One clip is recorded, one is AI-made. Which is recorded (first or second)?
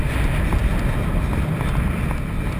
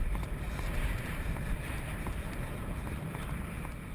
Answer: first